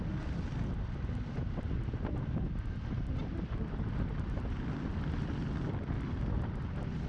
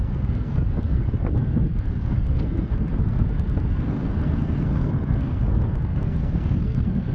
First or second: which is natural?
first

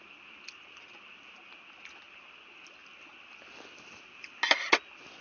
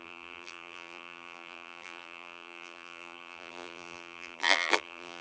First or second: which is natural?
first